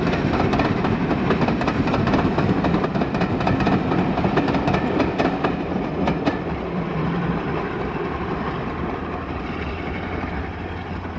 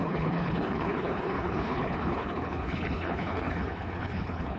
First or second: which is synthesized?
second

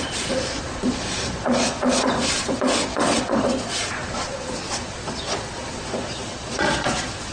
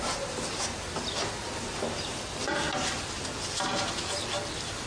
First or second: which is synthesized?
first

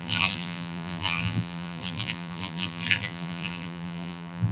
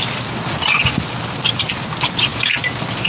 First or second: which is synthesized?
first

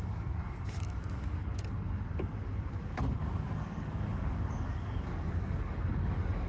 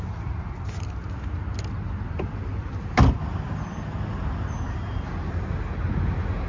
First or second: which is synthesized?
first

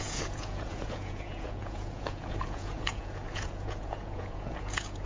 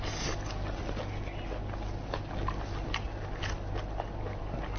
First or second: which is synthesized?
first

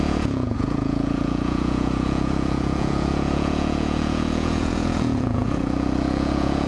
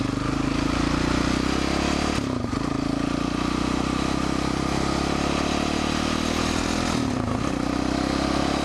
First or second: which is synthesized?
first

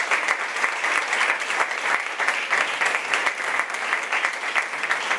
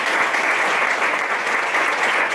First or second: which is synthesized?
second